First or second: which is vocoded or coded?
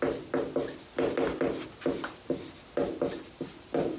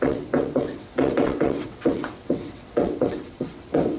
second